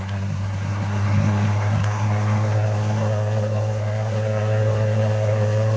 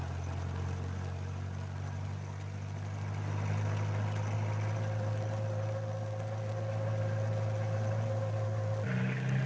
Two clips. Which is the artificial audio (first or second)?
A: first